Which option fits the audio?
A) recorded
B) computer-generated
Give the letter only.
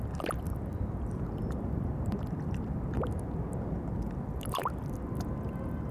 A